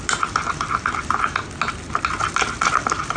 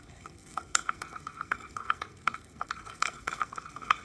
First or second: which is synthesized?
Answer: second